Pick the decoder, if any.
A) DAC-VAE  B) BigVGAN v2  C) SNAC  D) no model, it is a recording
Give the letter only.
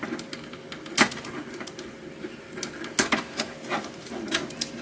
D